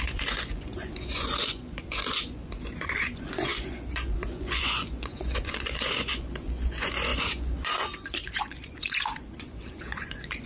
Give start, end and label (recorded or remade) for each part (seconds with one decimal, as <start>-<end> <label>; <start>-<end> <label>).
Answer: 0.0-10.5 remade

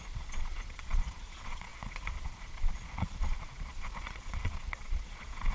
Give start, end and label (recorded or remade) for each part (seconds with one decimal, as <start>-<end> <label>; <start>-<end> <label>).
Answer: 0.0-5.5 remade